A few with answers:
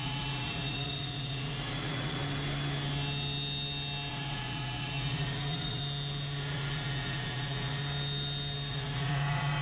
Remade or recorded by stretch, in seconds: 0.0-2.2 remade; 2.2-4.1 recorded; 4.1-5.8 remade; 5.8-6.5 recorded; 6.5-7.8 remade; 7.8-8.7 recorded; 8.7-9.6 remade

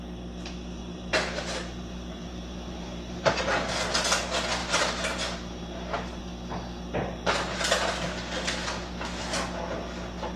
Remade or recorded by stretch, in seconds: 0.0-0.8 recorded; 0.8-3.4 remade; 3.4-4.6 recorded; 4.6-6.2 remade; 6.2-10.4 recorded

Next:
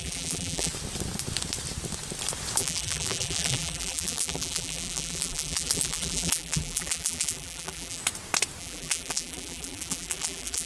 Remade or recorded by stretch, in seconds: 0.0-0.7 remade; 0.7-2.6 recorded; 2.6-8.0 remade; 8.0-8.6 recorded; 8.6-10.7 remade